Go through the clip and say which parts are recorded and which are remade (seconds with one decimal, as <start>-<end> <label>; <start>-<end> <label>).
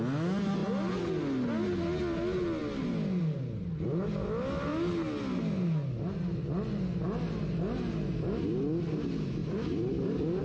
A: 0.0-0.6 recorded; 0.6-1.2 remade; 1.2-9.4 recorded; 9.4-10.4 remade